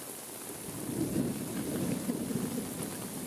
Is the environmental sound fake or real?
real